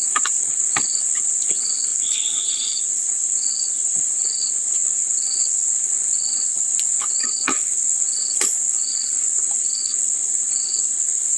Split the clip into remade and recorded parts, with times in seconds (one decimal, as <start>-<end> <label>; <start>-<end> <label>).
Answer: 0.0-11.4 remade